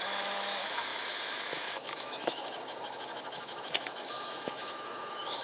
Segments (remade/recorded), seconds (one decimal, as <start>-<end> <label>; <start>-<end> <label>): 0.0-5.4 remade